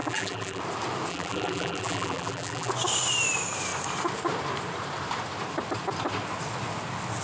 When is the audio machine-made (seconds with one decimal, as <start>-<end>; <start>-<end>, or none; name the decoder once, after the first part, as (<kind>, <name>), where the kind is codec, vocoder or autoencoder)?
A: 0.0-0.6 (vocoder, BigVGAN v2); 1.1-2.7